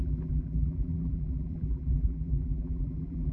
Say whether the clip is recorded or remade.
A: remade